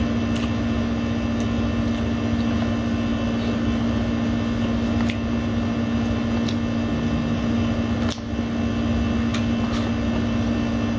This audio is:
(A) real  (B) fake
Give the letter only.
A